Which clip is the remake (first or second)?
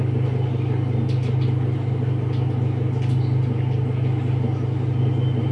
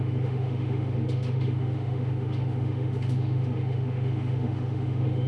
second